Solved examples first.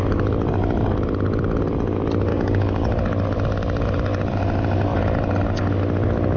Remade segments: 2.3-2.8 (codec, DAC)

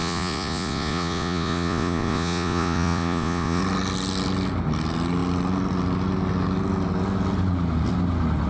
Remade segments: 0.0-3.6 (vocoder, Vocos)

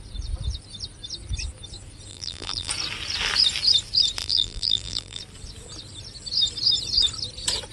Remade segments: 2.1-2.7 (vocoder, BigVGAN v2); 4.2-5.2

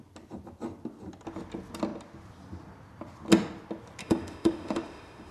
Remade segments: 4.0-5.3 (autoencoder, DAC-VAE)